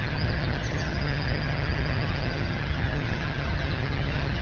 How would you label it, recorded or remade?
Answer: remade